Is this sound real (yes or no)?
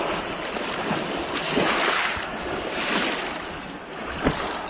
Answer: yes